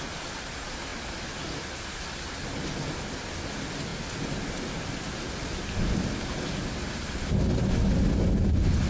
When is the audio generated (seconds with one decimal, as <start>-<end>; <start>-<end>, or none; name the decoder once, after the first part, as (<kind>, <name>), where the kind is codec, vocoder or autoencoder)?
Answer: none